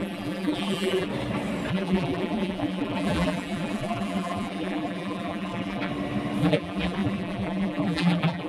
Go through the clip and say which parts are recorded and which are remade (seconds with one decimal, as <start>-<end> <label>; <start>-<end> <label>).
0.0-1.1 remade; 1.1-1.7 recorded; 1.7-5.9 remade; 5.9-6.4 recorded; 6.4-8.5 remade